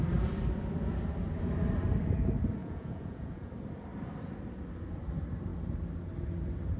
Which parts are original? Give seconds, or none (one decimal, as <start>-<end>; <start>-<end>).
0.0-2.6; 3.5-6.8